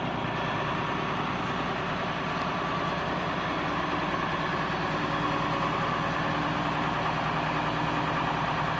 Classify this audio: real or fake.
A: real